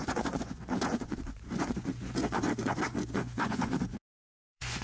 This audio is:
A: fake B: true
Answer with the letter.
A